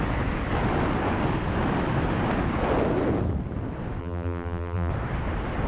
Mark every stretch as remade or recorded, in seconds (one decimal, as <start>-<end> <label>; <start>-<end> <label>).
0.0-4.0 recorded; 4.0-4.9 remade; 4.9-5.7 recorded